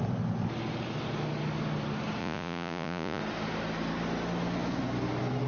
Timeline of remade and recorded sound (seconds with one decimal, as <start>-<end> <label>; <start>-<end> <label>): 0.0-2.2 recorded; 2.2-3.2 remade; 3.2-5.5 recorded